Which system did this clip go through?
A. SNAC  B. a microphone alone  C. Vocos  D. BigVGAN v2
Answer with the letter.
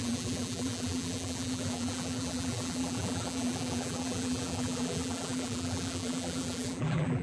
D